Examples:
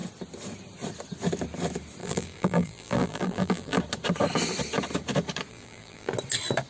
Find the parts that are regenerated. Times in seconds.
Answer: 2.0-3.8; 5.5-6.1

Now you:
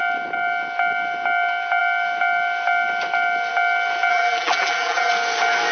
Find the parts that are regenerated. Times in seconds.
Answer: 4.1-5.1

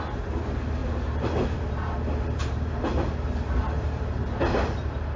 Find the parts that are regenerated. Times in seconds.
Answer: 0.8-3.0

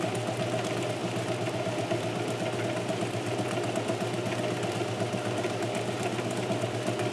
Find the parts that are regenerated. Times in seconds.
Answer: none

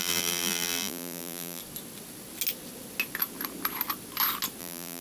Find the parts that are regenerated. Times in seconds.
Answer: 0.0-1.6; 4.6-5.0

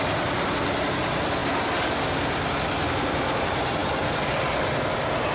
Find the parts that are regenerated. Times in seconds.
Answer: 1.4-2.9

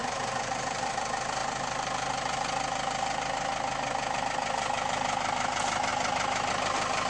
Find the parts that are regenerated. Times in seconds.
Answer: 0.0-0.9

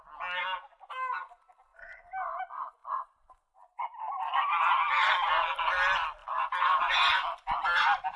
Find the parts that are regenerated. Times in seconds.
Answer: 1.7-2.4; 2.8-4.4; 6.2-8.2